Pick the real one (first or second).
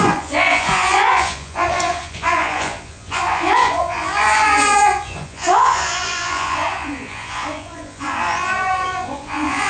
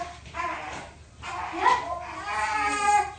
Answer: second